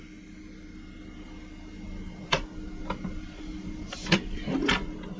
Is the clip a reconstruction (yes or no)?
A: no